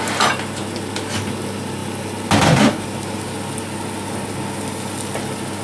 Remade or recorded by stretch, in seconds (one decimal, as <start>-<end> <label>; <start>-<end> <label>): 0.0-5.6 recorded